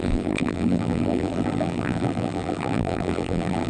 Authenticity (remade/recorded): remade